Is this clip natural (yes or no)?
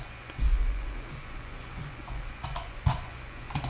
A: no